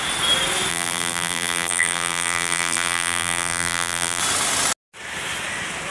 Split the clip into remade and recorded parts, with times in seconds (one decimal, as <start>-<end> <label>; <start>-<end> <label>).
0.0-0.7 recorded; 0.7-4.2 remade; 4.2-5.9 recorded